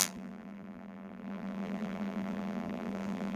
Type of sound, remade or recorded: remade